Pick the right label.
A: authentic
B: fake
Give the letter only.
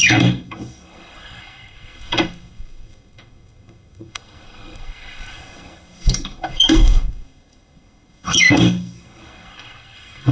B